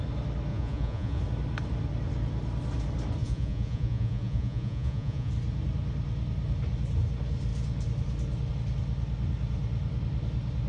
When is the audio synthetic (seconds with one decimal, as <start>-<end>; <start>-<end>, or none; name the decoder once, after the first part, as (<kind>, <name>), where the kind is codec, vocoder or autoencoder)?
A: 0.5-1.2 (vocoder, Vocos); 3.2-5.3